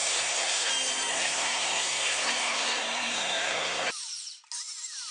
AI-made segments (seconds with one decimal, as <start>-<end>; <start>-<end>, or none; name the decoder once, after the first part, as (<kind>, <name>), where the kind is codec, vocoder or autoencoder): 0.0-0.7 (codec, SNAC); 1.1-3.9